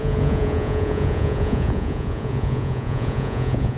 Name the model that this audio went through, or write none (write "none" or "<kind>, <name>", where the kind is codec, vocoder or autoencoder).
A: vocoder, Vocos